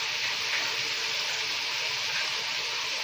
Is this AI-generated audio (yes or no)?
no